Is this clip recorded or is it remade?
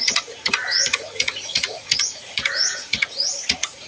remade